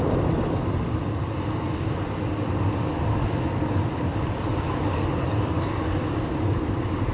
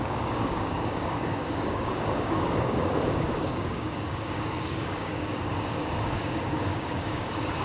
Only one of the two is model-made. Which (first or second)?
second